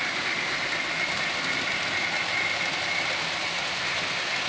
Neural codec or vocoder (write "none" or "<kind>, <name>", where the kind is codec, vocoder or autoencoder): none